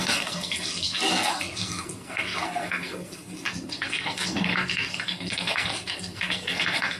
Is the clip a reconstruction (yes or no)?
yes